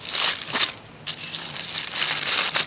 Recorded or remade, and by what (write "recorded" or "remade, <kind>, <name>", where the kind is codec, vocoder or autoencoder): recorded